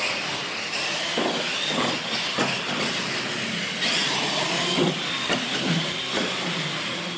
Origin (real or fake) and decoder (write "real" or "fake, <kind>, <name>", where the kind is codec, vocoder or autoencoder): real